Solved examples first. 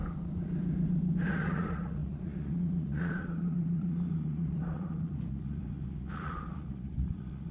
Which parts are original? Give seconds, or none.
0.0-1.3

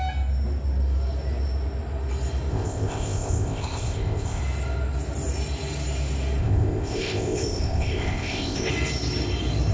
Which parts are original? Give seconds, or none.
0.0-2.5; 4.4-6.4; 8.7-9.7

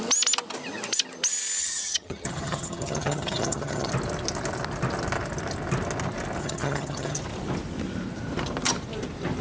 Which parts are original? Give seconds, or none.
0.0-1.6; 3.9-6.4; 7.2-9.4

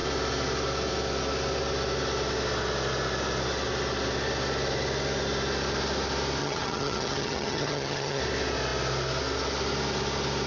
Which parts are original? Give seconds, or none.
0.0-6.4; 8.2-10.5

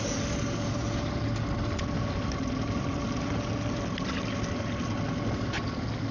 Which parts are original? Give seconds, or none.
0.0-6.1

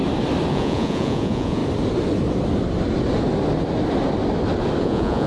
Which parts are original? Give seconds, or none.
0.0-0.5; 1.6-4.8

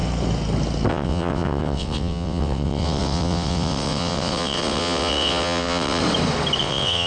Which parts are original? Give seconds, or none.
0.0-0.9; 6.0-6.6

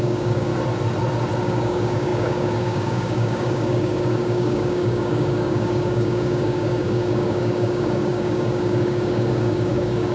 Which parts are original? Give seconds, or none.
0.5-1.4